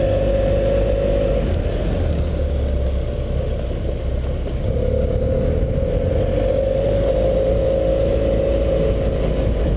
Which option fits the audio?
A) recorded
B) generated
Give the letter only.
A